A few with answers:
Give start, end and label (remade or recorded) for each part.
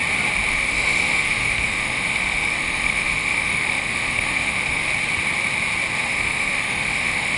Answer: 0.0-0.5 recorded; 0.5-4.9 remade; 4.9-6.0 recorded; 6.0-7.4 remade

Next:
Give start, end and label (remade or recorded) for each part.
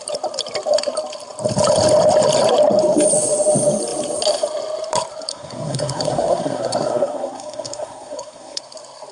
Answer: 0.0-5.3 recorded; 5.3-8.6 remade; 8.6-9.1 recorded